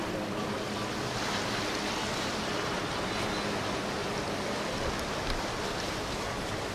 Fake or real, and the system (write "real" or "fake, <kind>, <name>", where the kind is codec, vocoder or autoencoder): real